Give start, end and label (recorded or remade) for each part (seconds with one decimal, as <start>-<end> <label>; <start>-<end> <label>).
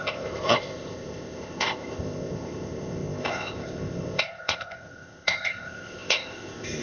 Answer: 0.0-6.8 remade